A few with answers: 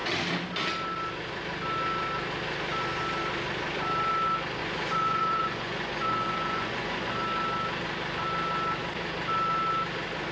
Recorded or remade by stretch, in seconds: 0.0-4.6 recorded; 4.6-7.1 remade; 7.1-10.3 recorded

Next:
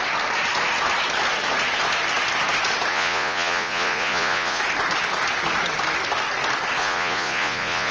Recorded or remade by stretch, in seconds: 0.0-2.9 recorded; 2.9-4.6 remade; 4.6-6.8 recorded; 6.8-7.9 remade

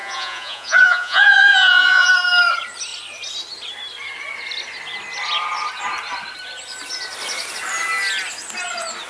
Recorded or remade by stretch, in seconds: 0.0-2.1 remade; 2.1-9.1 recorded

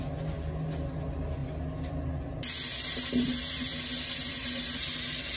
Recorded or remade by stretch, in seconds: 0.0-5.4 recorded